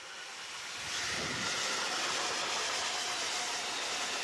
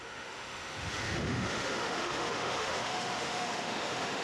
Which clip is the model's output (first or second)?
second